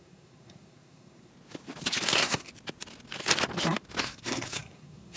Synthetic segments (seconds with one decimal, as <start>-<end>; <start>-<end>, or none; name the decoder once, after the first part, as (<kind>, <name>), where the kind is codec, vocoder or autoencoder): 0.0-1.3 (codec, SNAC); 2.1-2.5; 4.0-5.2